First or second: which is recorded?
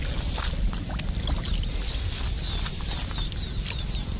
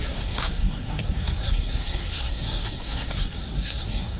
first